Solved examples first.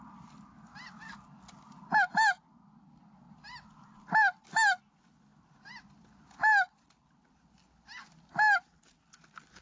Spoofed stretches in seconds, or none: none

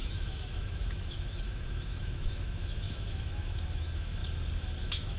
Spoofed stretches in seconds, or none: 0.0-4.2 (autoencoder, DAC-VAE); 4.8-5.2

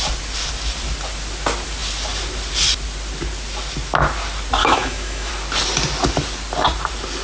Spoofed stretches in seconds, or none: 4.6-5.3 (autoencoder, DAC-VAE)

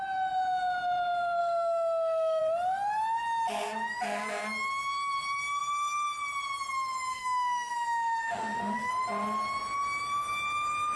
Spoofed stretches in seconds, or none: 1.4-2.4 (autoencoder, DAC-VAE); 7.1-8.9

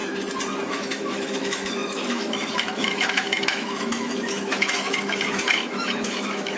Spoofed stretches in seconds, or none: 0.7-6.6 (autoencoder, DAC-VAE)

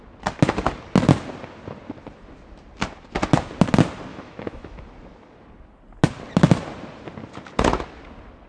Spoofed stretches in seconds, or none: 4.1-4.8 (autoencoder, DAC-VAE)

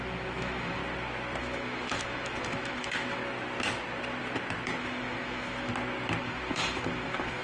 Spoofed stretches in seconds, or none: 0.0-0.8 (autoencoder, DAC-VAE); 1.4-3.2; 4.8-5.7; 6.2-7.4

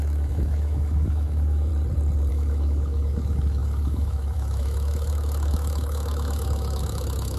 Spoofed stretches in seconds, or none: 0.0-1.7 (autoencoder, DAC-VAE); 2.3-7.4